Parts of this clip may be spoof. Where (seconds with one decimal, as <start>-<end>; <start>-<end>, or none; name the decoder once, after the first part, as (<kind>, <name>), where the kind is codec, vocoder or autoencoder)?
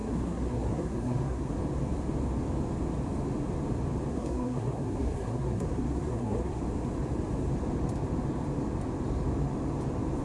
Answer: 0.0-1.5 (codec, SNAC); 4.1-6.6